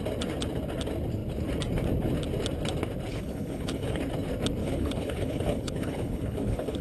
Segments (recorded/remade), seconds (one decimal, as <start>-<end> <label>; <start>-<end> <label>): 0.0-3.1 recorded; 3.1-4.0 remade; 4.0-4.6 recorded; 4.6-6.8 remade